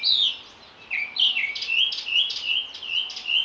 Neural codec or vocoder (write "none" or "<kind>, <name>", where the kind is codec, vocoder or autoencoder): none